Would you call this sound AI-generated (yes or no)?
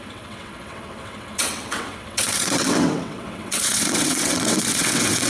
yes